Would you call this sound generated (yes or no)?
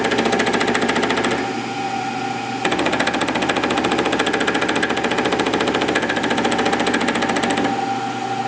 no